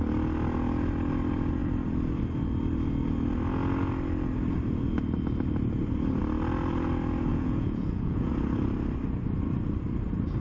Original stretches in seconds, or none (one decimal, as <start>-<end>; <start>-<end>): 0.0-7.3; 8.3-10.4